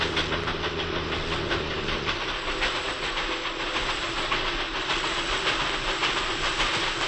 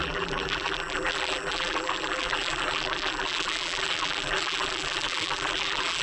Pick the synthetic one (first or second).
second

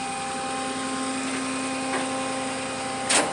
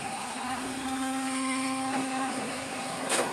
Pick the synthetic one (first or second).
second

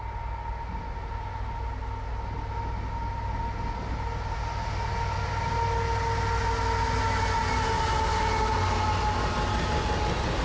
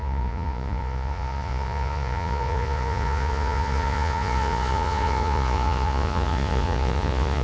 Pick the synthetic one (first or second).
second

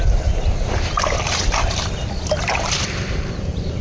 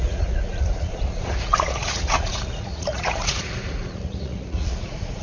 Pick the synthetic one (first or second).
second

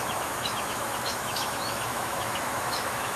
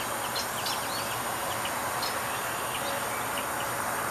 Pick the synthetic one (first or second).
first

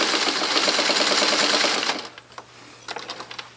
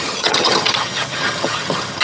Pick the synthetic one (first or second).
second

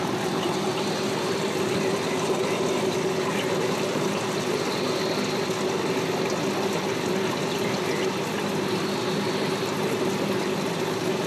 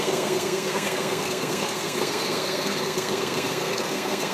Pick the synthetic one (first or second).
second